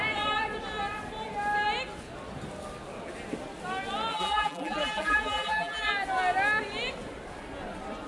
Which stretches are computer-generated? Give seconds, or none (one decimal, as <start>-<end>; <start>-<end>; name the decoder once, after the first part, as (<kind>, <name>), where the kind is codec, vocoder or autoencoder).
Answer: 4.1-5.9 (vocoder, BigVGAN v2)